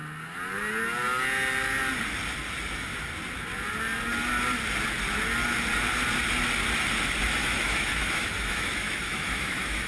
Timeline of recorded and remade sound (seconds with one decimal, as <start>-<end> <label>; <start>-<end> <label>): 0.0-7.4 recorded; 7.4-9.9 remade